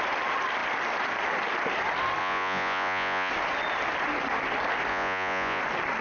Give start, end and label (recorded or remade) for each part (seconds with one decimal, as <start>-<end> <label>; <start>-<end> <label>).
0.0-2.2 recorded; 2.2-3.3 remade; 3.3-4.9 recorded; 4.9-5.6 remade; 5.6-6.0 recorded